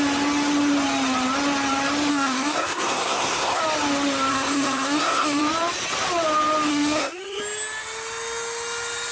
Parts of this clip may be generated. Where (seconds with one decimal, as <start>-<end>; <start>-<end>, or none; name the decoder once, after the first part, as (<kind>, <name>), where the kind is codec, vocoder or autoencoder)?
2.1-3.6 (codec, SNAC); 4.3-5.4; 6.7-7.4

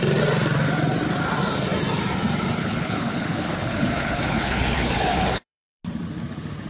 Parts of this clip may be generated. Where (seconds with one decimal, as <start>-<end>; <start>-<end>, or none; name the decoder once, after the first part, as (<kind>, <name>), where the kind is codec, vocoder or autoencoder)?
2.6-5.8 (codec, HILCodec)

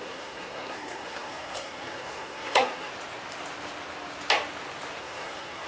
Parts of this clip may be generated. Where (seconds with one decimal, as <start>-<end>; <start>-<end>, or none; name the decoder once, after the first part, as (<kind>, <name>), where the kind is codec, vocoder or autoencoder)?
0.0-2.9 (codec, SNAC); 5.0-5.7

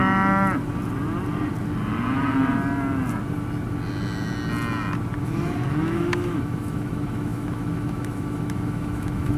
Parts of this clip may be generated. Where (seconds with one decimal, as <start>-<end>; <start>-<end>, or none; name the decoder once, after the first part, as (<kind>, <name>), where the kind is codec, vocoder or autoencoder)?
5.2-9.4 (autoencoder, DAC-VAE)

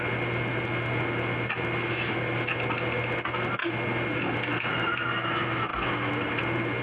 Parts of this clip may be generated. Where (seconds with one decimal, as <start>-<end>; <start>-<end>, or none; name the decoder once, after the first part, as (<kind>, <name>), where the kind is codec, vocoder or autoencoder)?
none

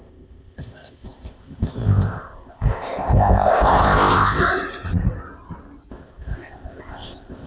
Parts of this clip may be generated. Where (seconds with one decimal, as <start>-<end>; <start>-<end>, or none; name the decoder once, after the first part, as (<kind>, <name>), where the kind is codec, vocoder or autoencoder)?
0.0-4.4 (codec, ZipCodec); 5.9-7.5

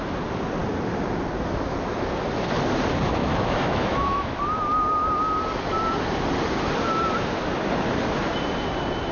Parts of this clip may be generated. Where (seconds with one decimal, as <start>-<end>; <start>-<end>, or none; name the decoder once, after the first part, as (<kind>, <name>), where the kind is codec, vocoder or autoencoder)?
3.2-4.4 (autoencoder, DAC-VAE)

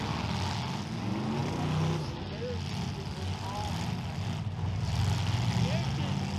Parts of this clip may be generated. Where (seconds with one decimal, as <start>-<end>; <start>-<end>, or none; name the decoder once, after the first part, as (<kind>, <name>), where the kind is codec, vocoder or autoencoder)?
none